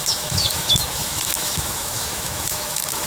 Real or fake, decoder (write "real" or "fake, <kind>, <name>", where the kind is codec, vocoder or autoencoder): fake, autoencoder, DAC-VAE